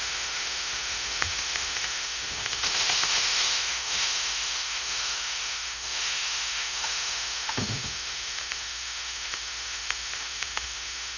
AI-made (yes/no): yes